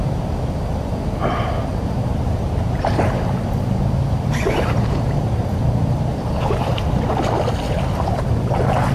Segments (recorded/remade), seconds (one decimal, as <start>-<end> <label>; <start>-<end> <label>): 0.0-1.7 recorded; 1.7-5.5 remade; 5.5-6.1 recorded; 6.1-7.2 remade; 7.2-8.9 recorded